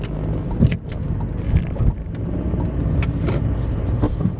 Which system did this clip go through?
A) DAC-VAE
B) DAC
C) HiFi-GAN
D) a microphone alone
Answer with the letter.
D